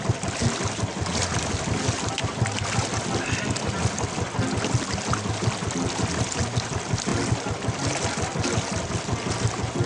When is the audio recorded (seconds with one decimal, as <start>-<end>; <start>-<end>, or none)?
0.0-9.9